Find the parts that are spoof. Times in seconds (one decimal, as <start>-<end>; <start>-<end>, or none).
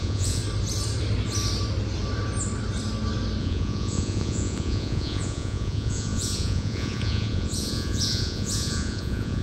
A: 0.0-0.4; 3.4-9.4